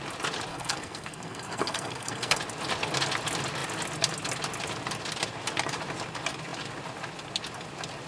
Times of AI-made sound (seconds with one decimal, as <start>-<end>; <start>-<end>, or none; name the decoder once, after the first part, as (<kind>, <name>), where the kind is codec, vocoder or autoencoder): 0.5-2.4 (codec, SNAC)